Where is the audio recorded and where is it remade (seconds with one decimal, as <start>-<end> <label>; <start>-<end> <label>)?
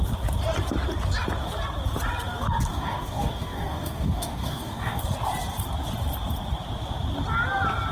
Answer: 0.0-2.7 recorded; 2.7-5.0 remade; 5.0-7.9 recorded